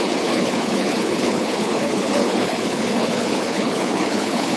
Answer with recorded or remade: remade